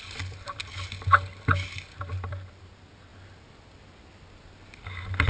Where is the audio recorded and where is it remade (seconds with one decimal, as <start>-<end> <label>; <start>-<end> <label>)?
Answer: 0.0-5.3 recorded